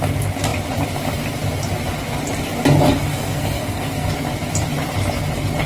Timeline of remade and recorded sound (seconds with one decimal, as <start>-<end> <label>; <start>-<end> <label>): 0.0-3.1 recorded; 3.1-4.1 remade; 4.1-5.7 recorded